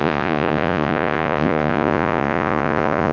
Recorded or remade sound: remade